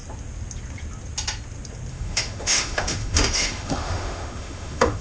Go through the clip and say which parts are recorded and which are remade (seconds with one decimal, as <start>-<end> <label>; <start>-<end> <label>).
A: 0.0-1.9 recorded; 1.9-5.0 remade